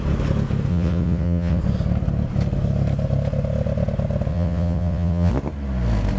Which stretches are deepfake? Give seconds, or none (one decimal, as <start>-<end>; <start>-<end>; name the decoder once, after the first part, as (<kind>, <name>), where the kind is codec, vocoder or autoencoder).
0.7-1.6 (vocoder, WaveNeXt); 4.3-5.3